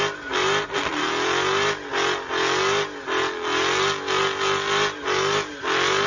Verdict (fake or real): real